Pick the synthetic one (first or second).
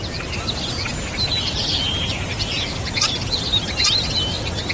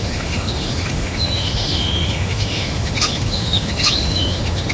second